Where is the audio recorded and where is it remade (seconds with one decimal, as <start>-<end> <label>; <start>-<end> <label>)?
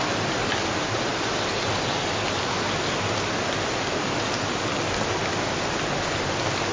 0.0-6.7 recorded